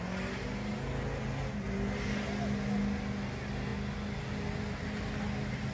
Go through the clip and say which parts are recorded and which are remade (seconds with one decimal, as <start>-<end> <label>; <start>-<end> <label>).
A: 0.0-5.7 recorded